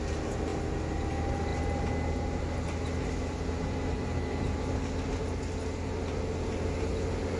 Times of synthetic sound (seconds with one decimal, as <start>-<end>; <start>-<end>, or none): none

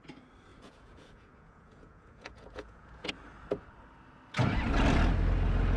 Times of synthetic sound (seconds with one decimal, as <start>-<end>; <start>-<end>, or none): 0.5-3.1